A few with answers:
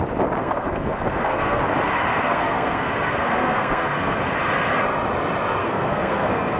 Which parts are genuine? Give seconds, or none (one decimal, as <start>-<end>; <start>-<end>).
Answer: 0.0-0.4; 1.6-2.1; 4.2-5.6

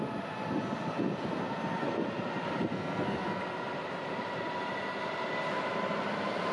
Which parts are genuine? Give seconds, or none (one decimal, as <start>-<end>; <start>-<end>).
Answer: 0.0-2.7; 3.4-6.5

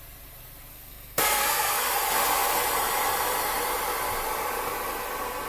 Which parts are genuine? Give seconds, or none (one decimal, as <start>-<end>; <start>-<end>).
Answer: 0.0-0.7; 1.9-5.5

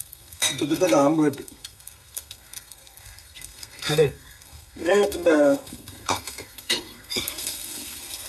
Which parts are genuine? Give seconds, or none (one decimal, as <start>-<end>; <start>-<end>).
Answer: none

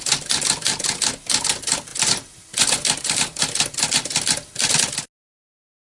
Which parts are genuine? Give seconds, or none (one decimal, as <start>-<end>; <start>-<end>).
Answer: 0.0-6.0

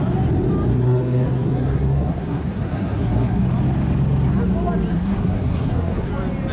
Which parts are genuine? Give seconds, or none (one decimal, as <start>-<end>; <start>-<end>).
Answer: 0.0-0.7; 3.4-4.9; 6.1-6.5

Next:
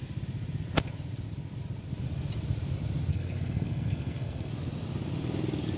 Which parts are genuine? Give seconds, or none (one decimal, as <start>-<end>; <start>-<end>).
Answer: 0.0-3.1; 4.5-5.8